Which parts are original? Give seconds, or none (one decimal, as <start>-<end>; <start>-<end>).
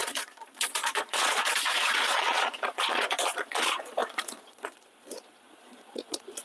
none